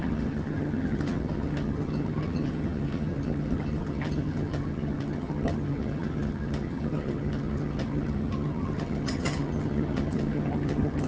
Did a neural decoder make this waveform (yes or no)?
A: yes